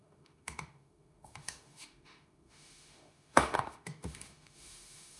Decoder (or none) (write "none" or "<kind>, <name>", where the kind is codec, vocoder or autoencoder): autoencoder, DAC-VAE